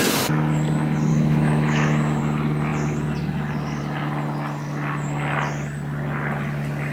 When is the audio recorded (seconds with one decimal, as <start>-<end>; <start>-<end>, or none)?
0.0-1.1; 2.2-6.9